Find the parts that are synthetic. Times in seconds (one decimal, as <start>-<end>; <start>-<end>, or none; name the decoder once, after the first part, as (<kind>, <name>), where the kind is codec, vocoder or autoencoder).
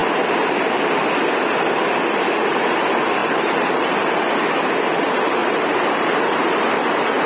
3.2-4.2 (vocoder, BigVGAN v2); 5.4-7.3